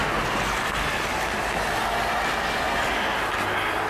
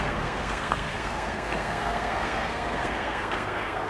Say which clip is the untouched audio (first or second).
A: first